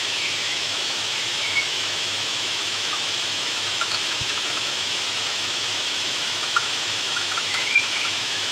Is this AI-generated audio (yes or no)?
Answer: yes